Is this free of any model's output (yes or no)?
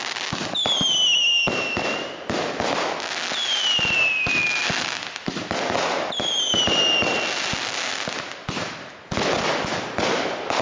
yes